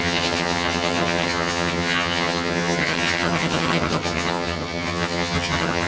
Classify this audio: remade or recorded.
remade